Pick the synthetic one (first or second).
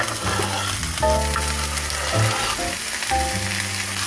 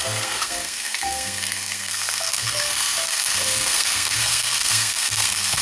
second